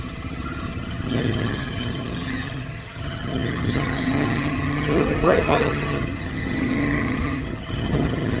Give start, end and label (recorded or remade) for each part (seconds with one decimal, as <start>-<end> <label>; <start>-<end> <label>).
0.0-8.4 remade